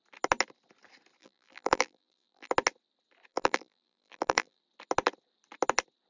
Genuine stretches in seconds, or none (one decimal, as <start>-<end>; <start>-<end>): 0.0-1.2; 2.5-3.3; 4.6-6.1